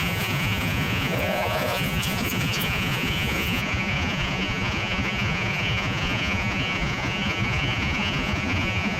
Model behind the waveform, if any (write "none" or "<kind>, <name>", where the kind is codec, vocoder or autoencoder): vocoder, Vocos